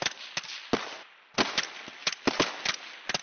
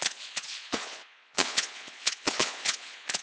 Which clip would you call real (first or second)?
first